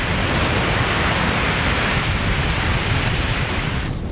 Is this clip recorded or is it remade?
recorded